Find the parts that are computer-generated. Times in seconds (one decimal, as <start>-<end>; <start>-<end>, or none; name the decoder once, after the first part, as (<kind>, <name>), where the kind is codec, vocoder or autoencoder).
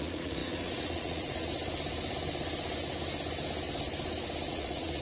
0.0-1.5 (vocoder, Vocos); 4.5-5.0